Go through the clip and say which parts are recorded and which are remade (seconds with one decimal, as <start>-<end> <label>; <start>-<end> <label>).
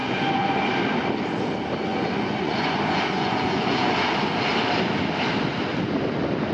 0.0-0.7 remade; 0.7-1.9 recorded; 1.9-4.1 remade; 4.1-6.5 recorded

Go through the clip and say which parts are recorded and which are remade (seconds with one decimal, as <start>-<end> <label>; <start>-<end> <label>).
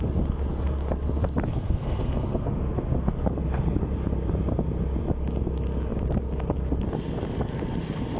0.0-1.5 recorded; 1.5-3.1 remade; 3.1-8.2 recorded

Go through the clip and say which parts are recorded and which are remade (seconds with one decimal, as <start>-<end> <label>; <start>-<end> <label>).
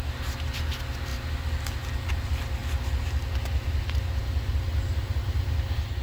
0.0-6.0 recorded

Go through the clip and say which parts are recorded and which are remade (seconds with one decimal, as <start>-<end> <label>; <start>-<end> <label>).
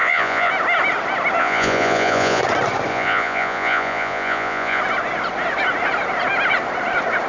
0.0-0.5 remade; 0.5-1.4 recorded; 1.4-2.4 remade; 2.4-2.9 recorded; 2.9-4.8 remade; 4.8-7.3 recorded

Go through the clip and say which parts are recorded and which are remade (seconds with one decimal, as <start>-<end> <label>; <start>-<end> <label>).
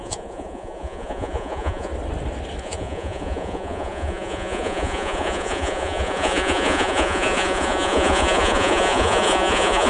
0.0-1.9 remade; 1.9-2.6 recorded; 2.6-9.9 remade